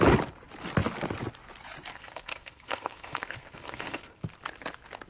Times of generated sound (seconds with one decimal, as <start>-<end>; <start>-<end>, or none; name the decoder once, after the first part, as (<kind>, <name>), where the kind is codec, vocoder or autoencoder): 1.9-4.2 (codec, SNAC)